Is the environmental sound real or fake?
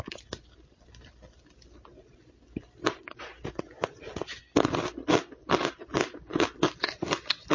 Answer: real